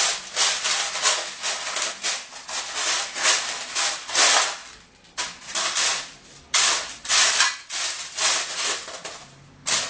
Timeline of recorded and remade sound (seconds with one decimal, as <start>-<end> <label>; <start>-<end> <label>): 0.0-9.9 recorded